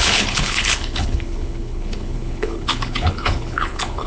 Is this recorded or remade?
remade